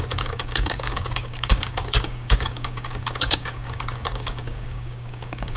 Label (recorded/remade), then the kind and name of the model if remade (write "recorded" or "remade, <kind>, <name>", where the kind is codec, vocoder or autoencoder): remade, codec, DAC